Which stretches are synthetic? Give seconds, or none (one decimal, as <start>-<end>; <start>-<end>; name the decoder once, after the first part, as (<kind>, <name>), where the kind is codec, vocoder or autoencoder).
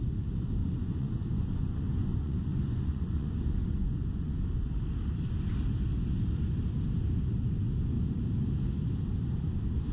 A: 0.6-4.4 (vocoder, Vocos)